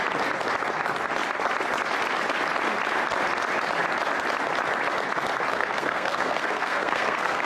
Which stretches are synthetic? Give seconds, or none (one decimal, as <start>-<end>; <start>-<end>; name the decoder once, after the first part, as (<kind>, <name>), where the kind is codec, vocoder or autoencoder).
5.5-7.5 (codec, SNAC)